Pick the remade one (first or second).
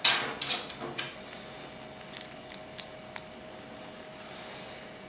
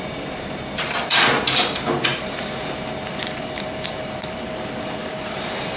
second